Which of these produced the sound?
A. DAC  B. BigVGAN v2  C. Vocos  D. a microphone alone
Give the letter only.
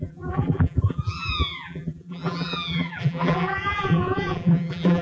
B